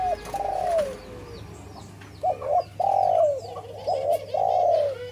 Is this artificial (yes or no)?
no